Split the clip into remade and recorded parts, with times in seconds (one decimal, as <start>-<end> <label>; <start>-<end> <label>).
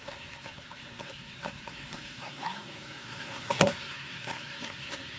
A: 0.0-5.2 remade